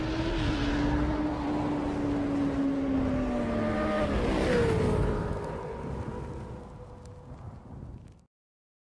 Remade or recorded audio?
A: recorded